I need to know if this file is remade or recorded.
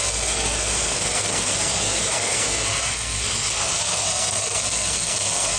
remade